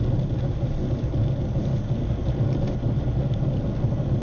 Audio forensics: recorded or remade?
recorded